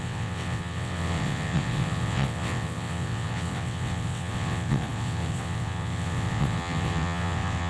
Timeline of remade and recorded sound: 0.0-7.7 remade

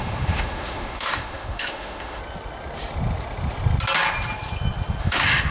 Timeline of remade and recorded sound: 0.0-2.2 remade; 2.2-5.0 recorded; 5.0-5.5 remade

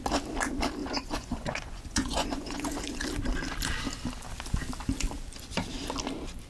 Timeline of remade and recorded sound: 0.0-0.8 recorded; 0.8-2.6 remade; 2.6-6.5 recorded

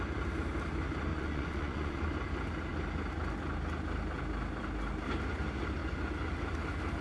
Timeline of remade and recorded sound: 0.0-1.1 recorded; 1.1-2.1 remade; 2.1-7.0 recorded